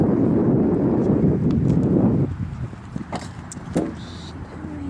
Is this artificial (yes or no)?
no